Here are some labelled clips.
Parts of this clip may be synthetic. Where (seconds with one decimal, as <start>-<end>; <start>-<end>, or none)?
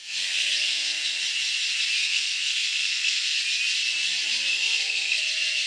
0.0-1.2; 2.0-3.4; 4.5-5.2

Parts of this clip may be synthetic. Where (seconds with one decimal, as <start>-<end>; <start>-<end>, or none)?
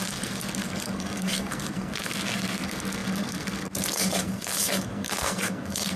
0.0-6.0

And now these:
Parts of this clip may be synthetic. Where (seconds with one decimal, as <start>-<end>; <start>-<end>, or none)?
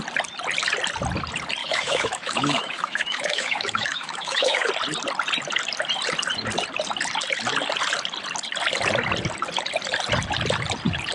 1.6-4.7